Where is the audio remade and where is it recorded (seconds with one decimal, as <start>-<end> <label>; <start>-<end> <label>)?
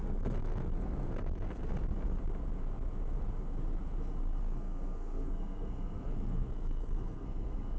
0.0-1.7 remade; 1.7-4.4 recorded; 4.4-7.8 remade